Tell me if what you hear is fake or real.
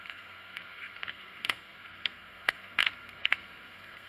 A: fake